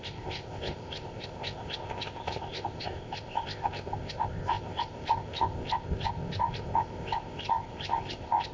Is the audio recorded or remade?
remade